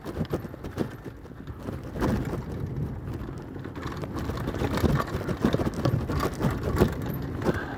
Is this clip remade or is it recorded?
recorded